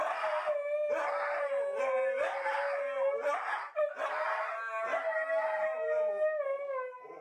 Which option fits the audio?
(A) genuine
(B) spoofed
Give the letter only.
A